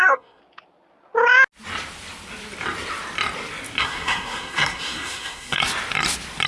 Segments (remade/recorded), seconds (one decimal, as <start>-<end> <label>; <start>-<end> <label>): 0.0-0.4 remade; 0.4-3.8 recorded; 3.8-5.6 remade; 5.6-6.5 recorded